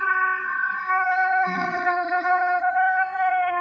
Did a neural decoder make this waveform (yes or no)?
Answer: yes